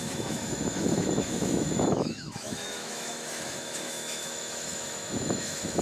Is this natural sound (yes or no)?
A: no